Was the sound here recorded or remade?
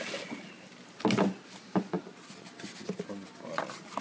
recorded